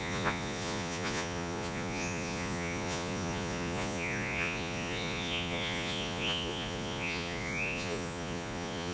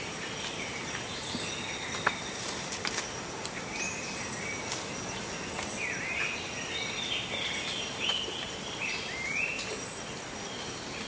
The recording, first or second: second